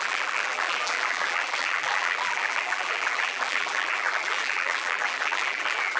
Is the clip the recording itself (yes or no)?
no